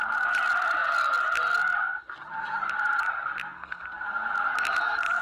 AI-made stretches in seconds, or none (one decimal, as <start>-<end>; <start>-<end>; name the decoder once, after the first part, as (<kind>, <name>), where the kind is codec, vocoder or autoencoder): 3.0-3.8 (codec, SNAC)

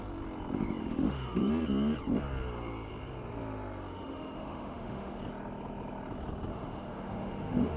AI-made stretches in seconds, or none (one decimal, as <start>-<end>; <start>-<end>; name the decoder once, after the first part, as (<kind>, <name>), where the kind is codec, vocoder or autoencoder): 0.8-1.5 (autoencoder, DAC-VAE); 3.9-5.2; 6.5-7.8

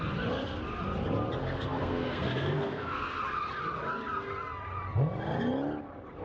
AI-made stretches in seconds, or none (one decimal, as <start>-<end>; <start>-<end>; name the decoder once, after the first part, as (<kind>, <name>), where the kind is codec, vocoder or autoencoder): 1.4-3.2 (codec, SNAC)

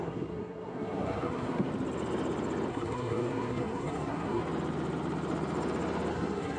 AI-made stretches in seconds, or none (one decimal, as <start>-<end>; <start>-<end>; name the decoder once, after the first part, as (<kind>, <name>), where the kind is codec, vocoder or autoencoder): 0.0-1.7 (codec, SNAC); 2.7-4.4; 6.1-6.6

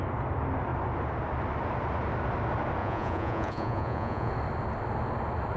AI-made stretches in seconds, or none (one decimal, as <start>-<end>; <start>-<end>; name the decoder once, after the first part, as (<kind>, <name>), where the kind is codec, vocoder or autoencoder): 2.8-4.3 (vocoder, Vocos)

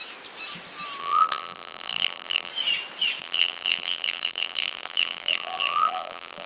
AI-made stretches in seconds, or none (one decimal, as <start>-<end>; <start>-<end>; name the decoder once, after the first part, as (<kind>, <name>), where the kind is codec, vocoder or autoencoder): 1.0-2.5 (vocoder, BigVGAN v2); 3.2-6.5